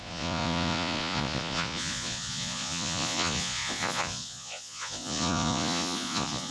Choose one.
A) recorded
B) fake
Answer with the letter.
B